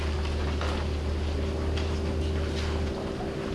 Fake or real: real